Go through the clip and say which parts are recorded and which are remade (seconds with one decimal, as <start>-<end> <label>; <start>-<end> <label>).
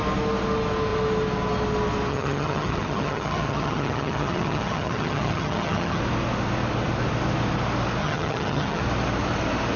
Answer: 0.0-2.1 recorded; 2.1-6.0 remade; 6.0-8.0 recorded; 8.0-8.8 remade; 8.8-9.8 recorded